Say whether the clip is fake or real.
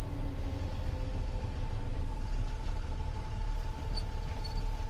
real